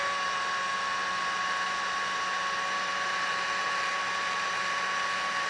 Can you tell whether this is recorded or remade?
recorded